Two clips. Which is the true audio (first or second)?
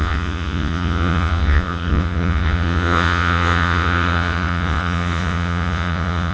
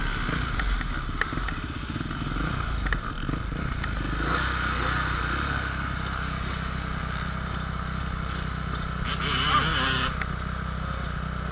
second